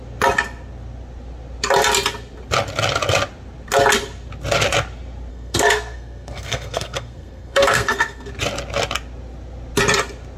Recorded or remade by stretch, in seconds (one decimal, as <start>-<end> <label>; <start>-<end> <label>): 0.0-5.3 recorded; 5.3-8.3 remade; 8.3-10.4 recorded